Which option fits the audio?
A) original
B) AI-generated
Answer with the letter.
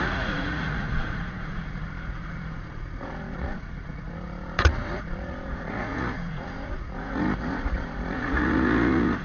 B